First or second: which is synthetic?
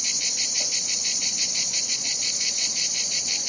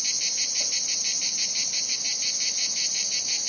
first